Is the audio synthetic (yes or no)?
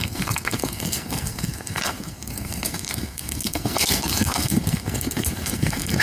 yes